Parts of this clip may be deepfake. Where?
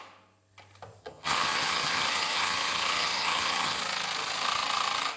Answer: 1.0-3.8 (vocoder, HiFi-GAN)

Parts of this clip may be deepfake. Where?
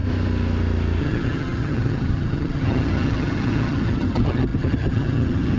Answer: 1.0-5.6 (vocoder, HiFi-GAN)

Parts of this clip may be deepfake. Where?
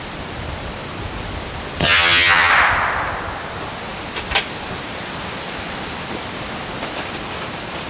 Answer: 1.8-2.5 (vocoder, HiFi-GAN)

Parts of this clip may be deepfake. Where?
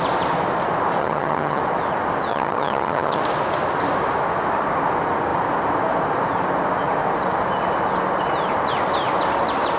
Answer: 1.0-1.6 (vocoder, HiFi-GAN); 2.3-3.2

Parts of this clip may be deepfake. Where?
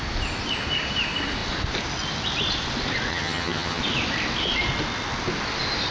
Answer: 3.1-3.8 (vocoder, HiFi-GAN)